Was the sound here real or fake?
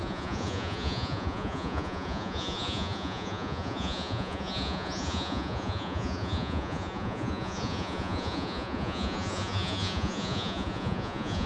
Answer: fake